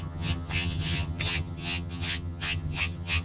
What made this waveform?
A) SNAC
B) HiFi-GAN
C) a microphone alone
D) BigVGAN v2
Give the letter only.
B